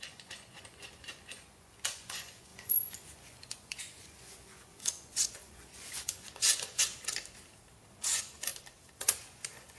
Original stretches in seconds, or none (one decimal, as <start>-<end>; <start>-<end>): 6.9-7.9; 8.5-9.0